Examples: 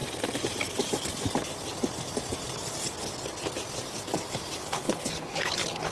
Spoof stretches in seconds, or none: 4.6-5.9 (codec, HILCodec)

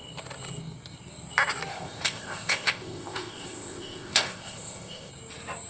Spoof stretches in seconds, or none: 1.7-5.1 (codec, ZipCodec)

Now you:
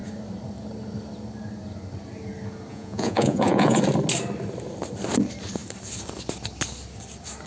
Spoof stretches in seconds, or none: 2.7-3.8 (vocoder, Vocos)

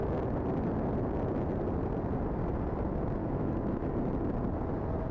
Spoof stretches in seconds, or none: 3.2-3.9 (autoencoder, DAC-VAE)

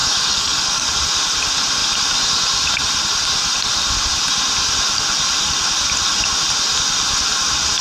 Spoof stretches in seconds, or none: 0.0-0.9 (codec, DAC)

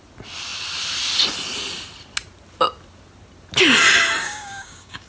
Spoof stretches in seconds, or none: 4.2-5.1 (codec, DAC)